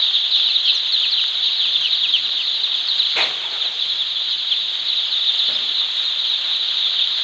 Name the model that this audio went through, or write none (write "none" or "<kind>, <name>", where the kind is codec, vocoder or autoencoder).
none